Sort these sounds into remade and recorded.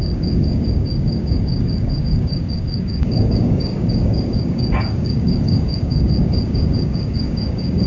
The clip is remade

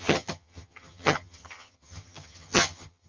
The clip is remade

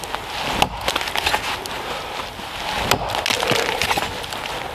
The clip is recorded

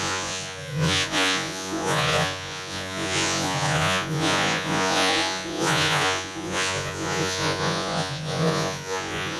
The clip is remade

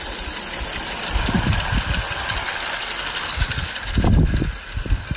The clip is recorded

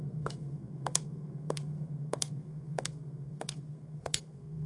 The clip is remade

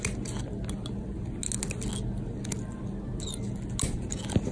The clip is recorded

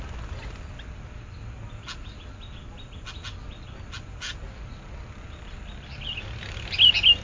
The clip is recorded